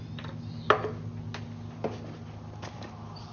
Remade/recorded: recorded